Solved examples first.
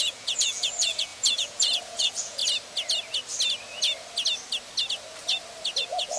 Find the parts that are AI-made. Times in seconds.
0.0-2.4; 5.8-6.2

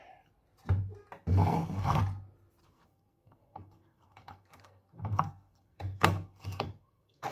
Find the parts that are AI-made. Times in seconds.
1.3-2.0; 2.6-7.3

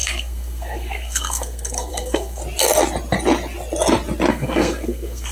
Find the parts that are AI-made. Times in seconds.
0.0-2.4; 4.3-5.3

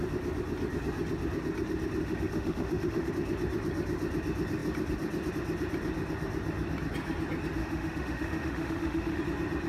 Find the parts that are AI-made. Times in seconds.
2.0-3.1; 7.6-9.2

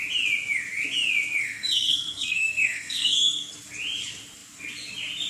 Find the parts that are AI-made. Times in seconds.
1.4-3.5